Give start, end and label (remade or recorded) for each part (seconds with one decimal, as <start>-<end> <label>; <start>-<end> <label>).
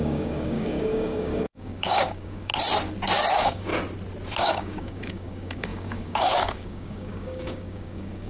0.0-2.5 remade; 2.5-3.3 recorded; 3.3-3.7 remade; 3.7-4.4 recorded; 4.4-8.3 remade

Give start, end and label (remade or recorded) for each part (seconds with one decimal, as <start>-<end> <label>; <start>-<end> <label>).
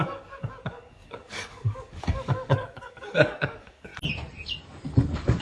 0.0-3.9 remade; 3.9-4.6 recorded; 4.6-5.4 remade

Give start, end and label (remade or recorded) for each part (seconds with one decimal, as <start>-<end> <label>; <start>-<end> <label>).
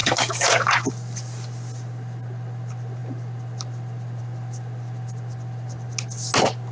0.0-0.9 remade; 0.9-6.7 recorded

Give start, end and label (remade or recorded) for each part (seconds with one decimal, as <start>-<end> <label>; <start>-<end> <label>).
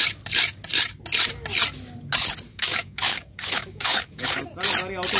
0.0-2.5 recorded; 2.5-4.4 remade; 4.4-5.2 recorded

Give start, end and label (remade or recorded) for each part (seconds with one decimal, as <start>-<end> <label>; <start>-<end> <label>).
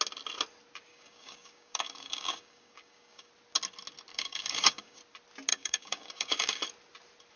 0.0-0.9 recorded; 0.9-3.3 remade; 3.3-4.1 recorded; 4.1-5.0 remade; 5.0-5.5 recorded; 5.5-6.6 remade; 6.6-7.4 recorded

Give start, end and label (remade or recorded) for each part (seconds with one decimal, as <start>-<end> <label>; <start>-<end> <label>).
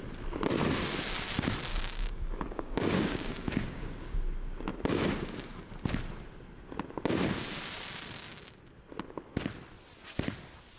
0.0-1.7 recorded; 1.7-4.2 remade; 4.2-10.8 recorded